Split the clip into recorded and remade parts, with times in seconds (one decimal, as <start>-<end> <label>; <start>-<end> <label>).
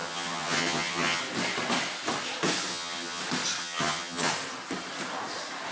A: 0.0-1.2 remade; 1.2-2.7 recorded; 2.7-3.2 remade; 3.2-3.6 recorded; 3.6-4.3 remade; 4.3-5.7 recorded